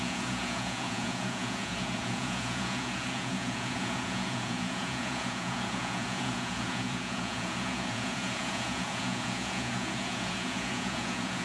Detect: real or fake fake